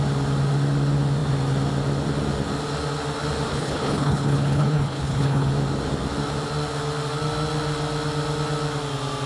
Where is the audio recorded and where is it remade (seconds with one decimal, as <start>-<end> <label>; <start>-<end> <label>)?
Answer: 0.0-3.5 recorded; 3.5-5.5 remade; 5.5-9.3 recorded